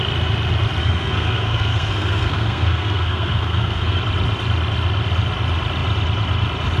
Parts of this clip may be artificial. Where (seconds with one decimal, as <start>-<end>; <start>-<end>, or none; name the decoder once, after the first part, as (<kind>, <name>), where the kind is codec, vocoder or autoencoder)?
0.8-4.0 (codec, SNAC)